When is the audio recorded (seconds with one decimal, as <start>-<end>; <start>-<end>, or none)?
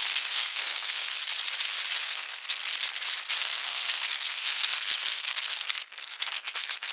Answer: 1.2-2.0; 2.6-3.4